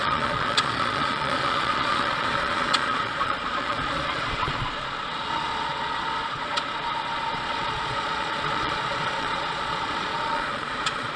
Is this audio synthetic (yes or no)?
yes